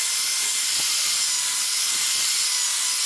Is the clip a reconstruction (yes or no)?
no